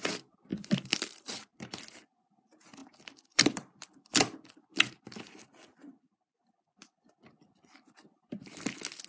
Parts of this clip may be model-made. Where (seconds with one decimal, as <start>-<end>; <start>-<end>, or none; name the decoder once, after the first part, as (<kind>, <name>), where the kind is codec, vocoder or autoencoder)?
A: 0.5-1.1 (vocoder, BigVGAN v2); 1.5-2.0; 2.8-7.2